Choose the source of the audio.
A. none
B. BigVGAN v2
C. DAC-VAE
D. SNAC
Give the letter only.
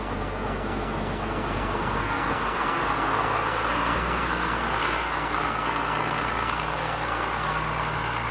D